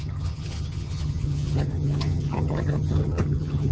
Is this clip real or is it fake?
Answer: fake